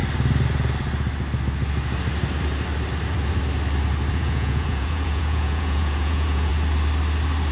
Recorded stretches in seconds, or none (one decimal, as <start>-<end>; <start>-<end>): 0.0-4.1; 6.5-7.5